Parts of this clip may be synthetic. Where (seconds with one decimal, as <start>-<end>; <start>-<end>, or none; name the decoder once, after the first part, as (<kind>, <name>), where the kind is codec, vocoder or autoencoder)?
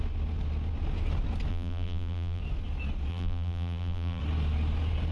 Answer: 1.5-2.4 (vocoder, BigVGAN v2); 3.1-4.2